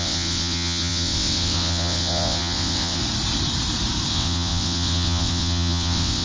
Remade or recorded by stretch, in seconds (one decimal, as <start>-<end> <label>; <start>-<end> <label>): 0.0-3.0 remade; 3.0-4.1 recorded; 4.1-6.2 remade